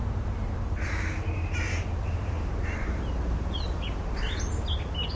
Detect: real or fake real